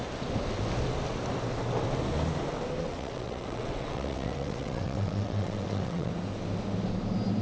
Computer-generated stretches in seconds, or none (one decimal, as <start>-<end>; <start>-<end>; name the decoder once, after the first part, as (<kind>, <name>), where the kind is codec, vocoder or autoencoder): 2.8-6.1 (vocoder, WaveNeXt)